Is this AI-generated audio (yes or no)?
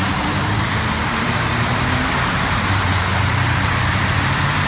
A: yes